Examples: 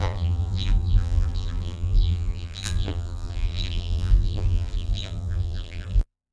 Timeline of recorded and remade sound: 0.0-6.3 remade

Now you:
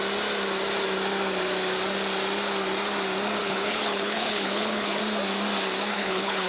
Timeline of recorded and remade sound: 0.0-3.4 recorded; 3.4-5.0 remade; 5.0-5.9 recorded; 5.9-6.5 remade

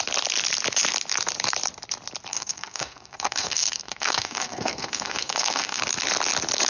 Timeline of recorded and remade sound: 0.0-2.3 recorded; 2.3-5.8 remade; 5.8-6.7 recorded